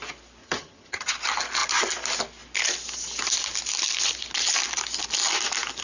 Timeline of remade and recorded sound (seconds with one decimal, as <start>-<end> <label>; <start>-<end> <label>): 0.0-0.4 recorded; 0.4-1.1 remade; 1.1-5.8 recorded